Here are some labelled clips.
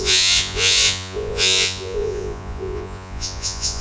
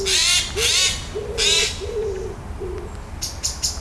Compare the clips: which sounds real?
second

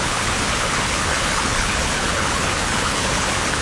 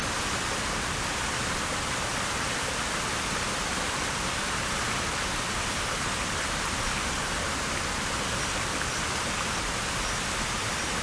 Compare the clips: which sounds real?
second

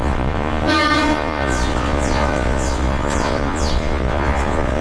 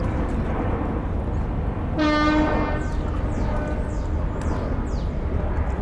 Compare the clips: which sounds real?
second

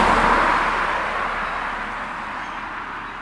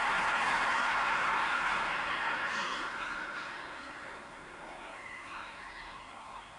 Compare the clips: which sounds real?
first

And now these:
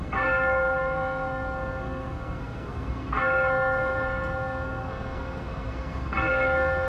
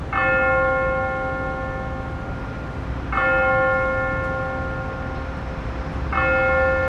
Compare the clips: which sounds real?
second